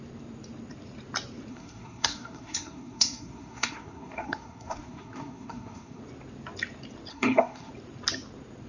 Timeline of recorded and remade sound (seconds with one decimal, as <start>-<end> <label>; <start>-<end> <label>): 0.0-1.5 recorded; 1.5-6.0 remade; 6.0-7.1 recorded; 7.1-7.7 remade; 7.7-8.7 recorded